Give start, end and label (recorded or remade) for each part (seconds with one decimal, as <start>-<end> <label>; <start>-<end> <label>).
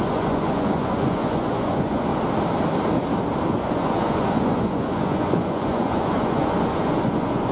0.0-2.1 remade; 2.1-3.6 recorded; 3.6-7.5 remade